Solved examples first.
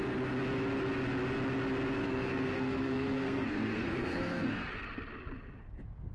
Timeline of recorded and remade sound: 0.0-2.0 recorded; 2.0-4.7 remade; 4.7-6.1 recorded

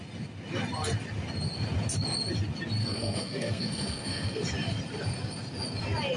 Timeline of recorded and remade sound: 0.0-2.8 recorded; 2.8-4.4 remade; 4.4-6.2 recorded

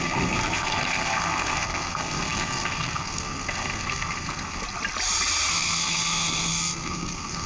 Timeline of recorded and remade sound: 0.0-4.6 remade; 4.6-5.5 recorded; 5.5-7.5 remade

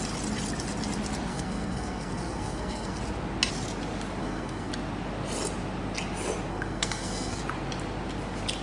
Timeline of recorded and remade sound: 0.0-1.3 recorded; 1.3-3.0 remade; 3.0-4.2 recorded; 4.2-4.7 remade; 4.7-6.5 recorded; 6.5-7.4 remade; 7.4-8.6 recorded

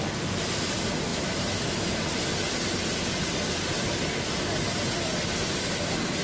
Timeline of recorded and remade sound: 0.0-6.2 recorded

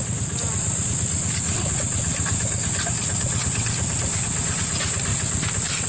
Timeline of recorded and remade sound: 0.0-5.9 recorded

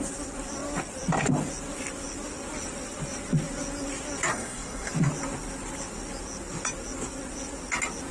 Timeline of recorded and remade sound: 0.0-4.3 recorded; 4.3-4.9 remade; 4.9-8.1 recorded

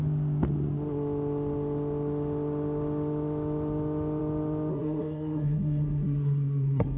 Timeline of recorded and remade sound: 0.0-4.7 recorded; 4.7-7.0 remade